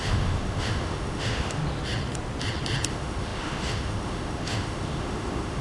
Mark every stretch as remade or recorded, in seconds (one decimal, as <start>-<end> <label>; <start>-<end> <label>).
0.0-1.6 remade; 1.6-2.9 recorded; 2.9-5.6 remade